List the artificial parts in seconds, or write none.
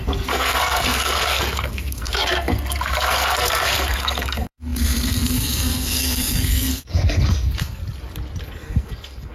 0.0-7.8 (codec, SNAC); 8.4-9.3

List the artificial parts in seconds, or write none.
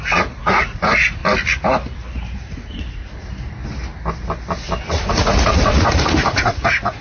0.0-1.2 (vocoder, Vocos); 2.5-3.0; 4.9-7.0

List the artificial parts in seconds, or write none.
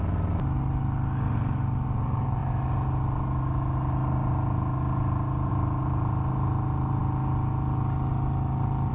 none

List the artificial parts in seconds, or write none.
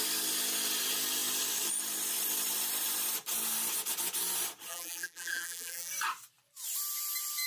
4.7-5.9 (vocoder, BigVGAN v2)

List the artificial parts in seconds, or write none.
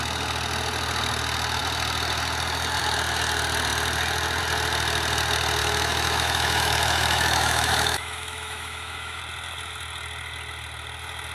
5.6-9.2 (autoencoder, DAC-VAE)